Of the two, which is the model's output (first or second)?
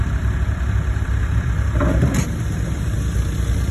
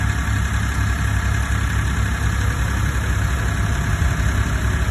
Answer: first